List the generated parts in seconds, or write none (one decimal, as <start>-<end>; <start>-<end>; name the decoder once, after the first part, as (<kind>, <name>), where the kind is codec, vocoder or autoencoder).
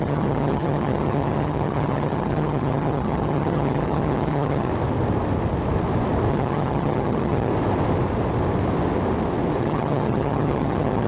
0.0-4.7 (vocoder, HiFi-GAN); 6.3-7.5; 9.6-11.1